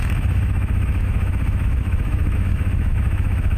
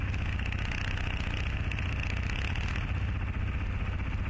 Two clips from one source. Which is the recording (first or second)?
second